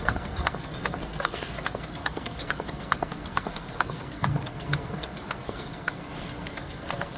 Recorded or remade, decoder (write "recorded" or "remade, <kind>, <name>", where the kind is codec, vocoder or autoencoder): remade, codec, SNAC